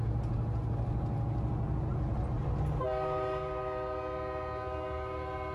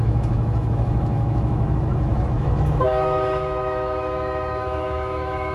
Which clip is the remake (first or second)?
second